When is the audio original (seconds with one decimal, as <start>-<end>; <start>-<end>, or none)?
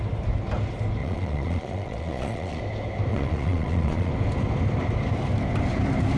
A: 0.0-1.0; 2.6-3.1; 4.1-6.2